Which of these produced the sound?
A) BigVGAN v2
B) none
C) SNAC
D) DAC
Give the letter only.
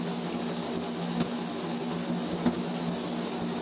B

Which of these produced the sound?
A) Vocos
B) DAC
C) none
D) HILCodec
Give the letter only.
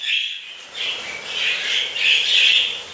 C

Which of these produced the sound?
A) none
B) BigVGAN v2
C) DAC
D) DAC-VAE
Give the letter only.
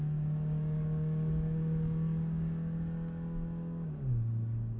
C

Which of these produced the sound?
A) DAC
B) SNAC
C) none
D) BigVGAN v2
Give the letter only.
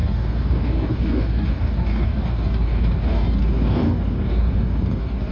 A